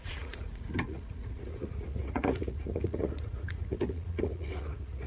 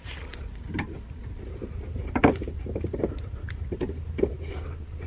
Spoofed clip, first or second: first